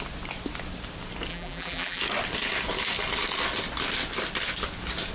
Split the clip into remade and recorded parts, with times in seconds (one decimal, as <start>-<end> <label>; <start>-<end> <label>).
0.0-1.3 recorded; 1.3-2.0 remade; 2.0-5.1 recorded